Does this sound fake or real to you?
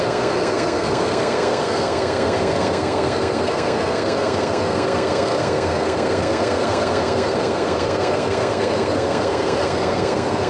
fake